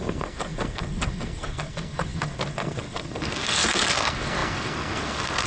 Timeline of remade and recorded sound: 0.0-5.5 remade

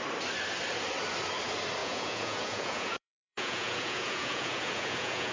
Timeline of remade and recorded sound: 0.0-1.8 recorded; 1.8-5.3 remade

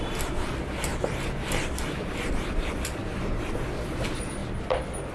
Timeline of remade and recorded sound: 0.0-0.9 recorded; 0.9-3.4 remade; 3.4-5.1 recorded

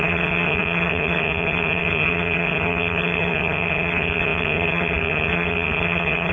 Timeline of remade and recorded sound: 0.0-6.3 remade

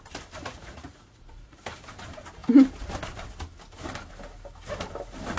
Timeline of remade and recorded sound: 0.0-0.4 recorded; 0.4-1.6 remade; 1.6-5.4 recorded

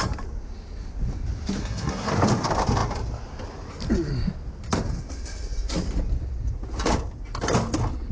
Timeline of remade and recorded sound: 0.0-1.6 recorded; 1.6-2.1 remade; 2.1-8.1 recorded

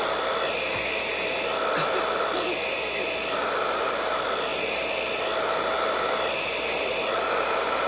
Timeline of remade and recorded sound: 0.0-7.9 recorded